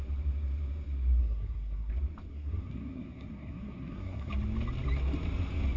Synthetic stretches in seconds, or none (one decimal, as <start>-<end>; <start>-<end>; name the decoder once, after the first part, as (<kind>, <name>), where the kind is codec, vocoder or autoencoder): 1.2-1.9 (codec, SNAC); 2.3-4.3